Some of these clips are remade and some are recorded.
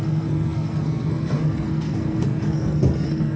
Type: remade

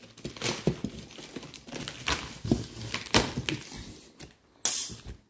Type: recorded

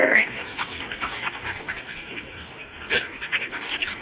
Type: remade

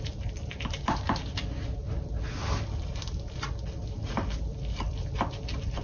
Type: recorded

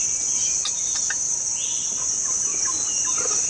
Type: recorded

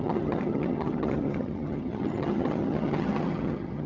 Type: remade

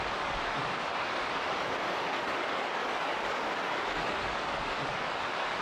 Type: remade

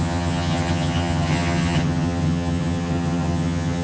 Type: remade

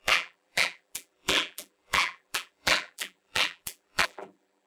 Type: remade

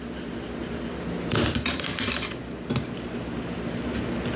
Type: recorded